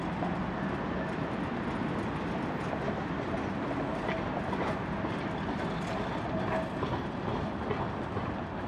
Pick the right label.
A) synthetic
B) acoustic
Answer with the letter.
B